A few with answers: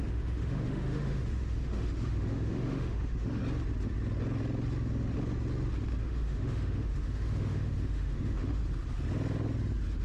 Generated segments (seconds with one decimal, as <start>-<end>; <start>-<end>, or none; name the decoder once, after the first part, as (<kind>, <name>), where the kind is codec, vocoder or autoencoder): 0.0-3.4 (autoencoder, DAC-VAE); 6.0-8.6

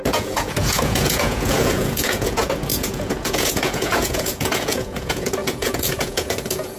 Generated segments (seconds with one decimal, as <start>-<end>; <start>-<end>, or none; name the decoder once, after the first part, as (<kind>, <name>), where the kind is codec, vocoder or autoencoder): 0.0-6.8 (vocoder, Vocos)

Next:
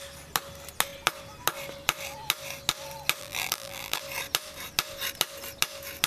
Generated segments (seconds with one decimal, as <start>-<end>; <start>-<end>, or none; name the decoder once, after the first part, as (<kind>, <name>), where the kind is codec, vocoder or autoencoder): 3.2-4.0 (vocoder, BigVGAN v2)